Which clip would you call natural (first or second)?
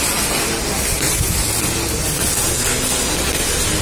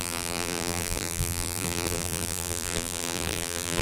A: first